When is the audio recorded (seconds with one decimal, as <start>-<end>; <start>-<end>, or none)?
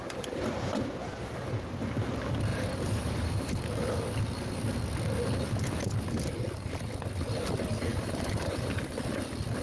0.0-2.5; 3.5-7.9; 8.5-9.6